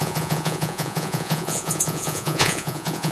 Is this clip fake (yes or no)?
yes